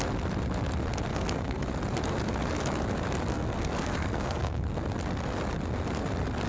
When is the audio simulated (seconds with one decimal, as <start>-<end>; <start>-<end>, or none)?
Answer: 1.1-1.6; 3.3-4.6